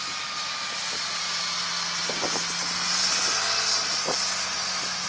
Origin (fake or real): real